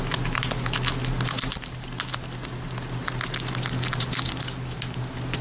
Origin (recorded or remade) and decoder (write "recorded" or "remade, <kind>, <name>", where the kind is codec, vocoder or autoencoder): recorded